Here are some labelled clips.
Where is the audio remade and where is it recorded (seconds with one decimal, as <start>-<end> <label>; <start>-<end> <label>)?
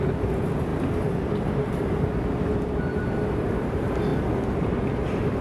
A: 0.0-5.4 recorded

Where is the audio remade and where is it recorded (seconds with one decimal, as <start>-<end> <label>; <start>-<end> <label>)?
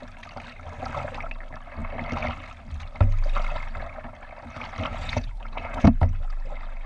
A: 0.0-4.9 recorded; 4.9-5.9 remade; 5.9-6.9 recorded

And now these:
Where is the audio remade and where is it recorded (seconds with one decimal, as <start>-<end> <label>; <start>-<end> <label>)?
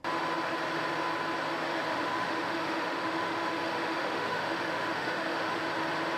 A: 0.0-1.9 recorded; 1.9-5.6 remade; 5.6-6.2 recorded